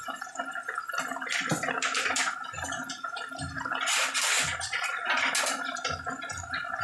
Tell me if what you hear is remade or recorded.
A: recorded